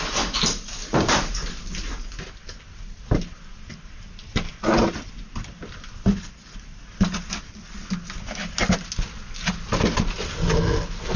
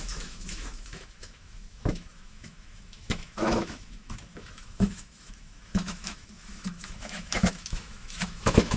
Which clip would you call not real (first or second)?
second